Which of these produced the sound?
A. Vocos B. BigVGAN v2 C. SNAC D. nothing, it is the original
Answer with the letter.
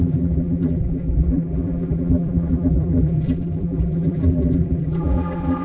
B